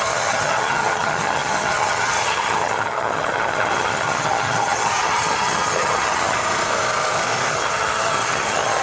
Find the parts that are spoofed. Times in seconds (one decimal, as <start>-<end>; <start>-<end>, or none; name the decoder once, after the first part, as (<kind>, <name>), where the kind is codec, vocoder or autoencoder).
0.0-6.4 (vocoder, HiFi-GAN); 7.5-8.8